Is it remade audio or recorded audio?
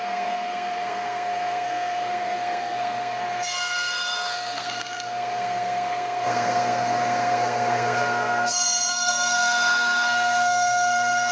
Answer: remade